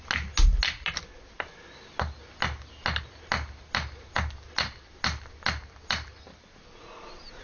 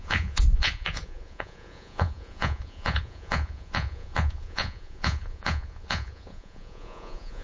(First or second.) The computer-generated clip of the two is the second